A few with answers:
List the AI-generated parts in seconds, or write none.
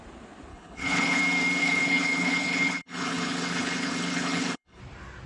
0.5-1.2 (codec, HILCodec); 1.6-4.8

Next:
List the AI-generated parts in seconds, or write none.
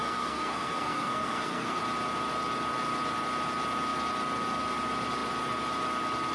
0.0-1.8 (codec, SNAC)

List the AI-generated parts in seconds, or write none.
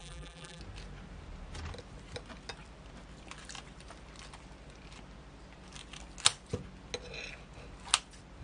0.0-0.6 (vocoder, BigVGAN v2)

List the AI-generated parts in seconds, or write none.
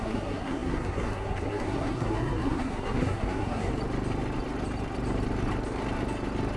0.0-3.7 (codec, SNAC)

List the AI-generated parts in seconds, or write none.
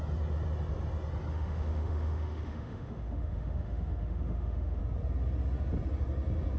1.3-4.8 (autoencoder, DAC-VAE)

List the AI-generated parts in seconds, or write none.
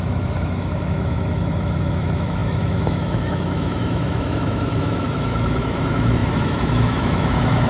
0.0-7.7 (autoencoder, DAC-VAE)